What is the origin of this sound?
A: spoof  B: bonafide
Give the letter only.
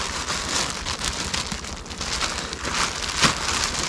B